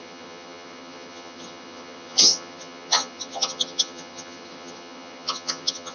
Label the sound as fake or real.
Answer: fake